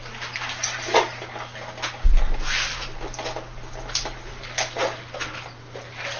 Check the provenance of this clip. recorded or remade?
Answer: recorded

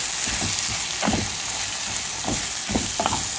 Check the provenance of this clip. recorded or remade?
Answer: recorded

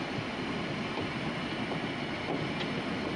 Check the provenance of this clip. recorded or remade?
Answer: recorded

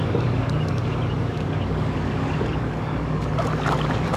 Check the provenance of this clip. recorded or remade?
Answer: remade